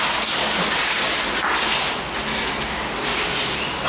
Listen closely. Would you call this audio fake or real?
real